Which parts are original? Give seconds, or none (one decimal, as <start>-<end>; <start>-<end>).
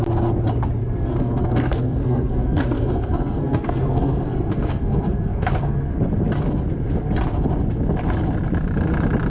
0.0-0.8; 5.9-9.3